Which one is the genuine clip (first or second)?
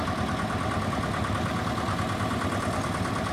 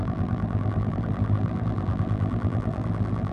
first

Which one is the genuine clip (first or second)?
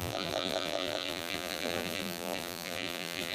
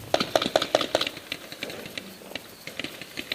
second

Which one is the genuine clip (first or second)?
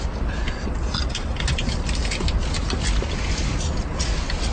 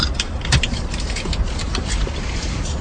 first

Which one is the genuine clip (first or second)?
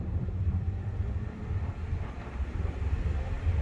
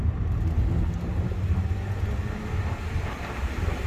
second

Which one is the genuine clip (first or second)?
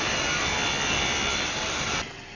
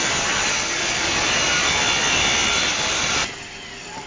first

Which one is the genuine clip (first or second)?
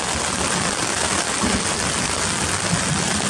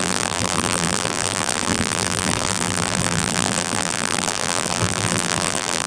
first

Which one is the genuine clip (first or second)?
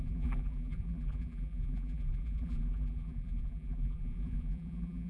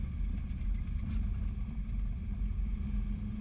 second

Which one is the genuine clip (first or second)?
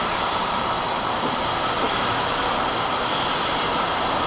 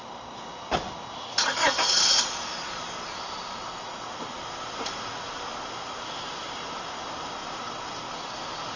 second